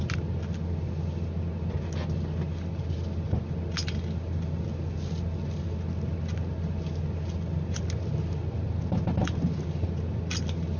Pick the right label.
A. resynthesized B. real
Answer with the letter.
B